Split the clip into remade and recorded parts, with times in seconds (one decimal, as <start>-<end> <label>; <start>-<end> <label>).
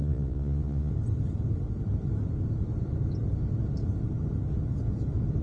0.0-0.9 remade; 0.9-5.4 recorded